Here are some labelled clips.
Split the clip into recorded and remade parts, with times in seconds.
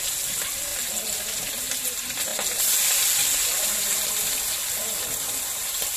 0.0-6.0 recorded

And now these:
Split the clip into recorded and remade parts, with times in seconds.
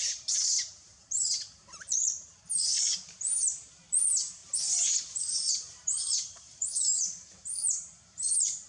0.0-4.4 remade; 4.4-5.1 recorded; 5.1-8.7 remade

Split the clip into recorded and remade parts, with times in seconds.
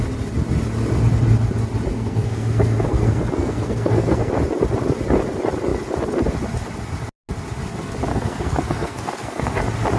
0.0-1.9 recorded; 1.9-4.3 remade; 4.3-8.1 recorded; 8.1-9.6 remade; 9.6-10.0 recorded